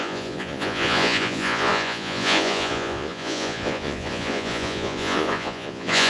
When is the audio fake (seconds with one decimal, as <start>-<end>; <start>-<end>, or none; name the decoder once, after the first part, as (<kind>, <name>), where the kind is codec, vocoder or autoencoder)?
0.0-6.1 (vocoder, Vocos)